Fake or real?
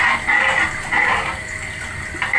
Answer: real